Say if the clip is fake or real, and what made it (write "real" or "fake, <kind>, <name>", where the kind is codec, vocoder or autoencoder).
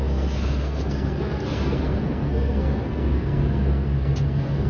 fake, codec, SNAC